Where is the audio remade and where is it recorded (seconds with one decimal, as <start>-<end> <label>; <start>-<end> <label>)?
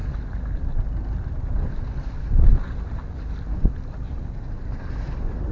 0.0-5.5 recorded